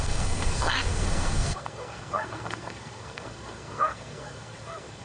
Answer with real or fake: fake